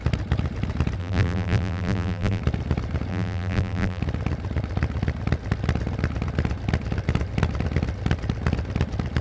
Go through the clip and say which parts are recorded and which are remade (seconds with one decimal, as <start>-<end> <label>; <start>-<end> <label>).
0.0-1.0 recorded; 1.0-2.4 remade; 2.4-3.1 recorded; 3.1-4.0 remade; 4.0-9.2 recorded